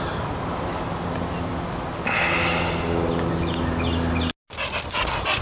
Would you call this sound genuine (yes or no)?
yes